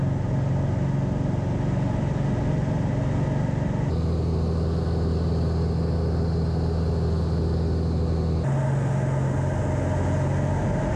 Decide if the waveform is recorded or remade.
recorded